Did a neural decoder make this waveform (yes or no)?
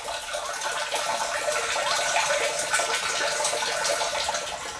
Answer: no